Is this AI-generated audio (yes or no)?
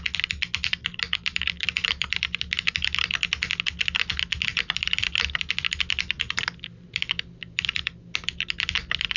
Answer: no